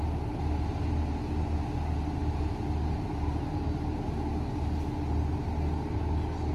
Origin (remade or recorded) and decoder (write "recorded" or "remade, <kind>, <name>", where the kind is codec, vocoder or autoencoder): recorded